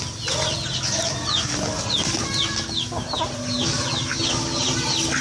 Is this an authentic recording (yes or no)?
yes